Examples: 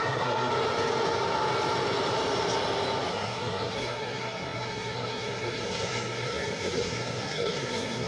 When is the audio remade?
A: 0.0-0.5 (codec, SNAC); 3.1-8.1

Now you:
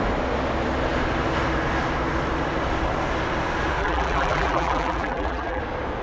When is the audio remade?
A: 3.8-5.6 (vocoder, BigVGAN v2)

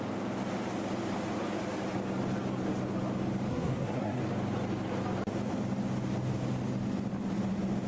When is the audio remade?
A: 3.5-4.2 (codec, SNAC)

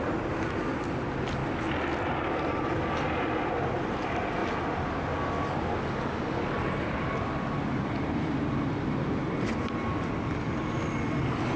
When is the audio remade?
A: none

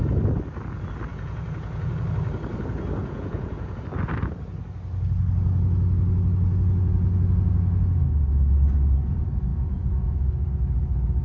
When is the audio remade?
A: 1.1-1.9 (vocoder, Vocos); 3.0-3.8; 9.5-10.6